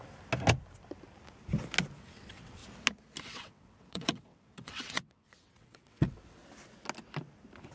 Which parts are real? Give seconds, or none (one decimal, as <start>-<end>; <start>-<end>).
0.0-2.0; 2.6-3.2; 6.4-7.7